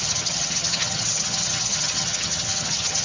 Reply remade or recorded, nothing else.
remade